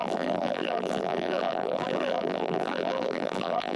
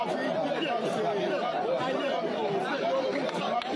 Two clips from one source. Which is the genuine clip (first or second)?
second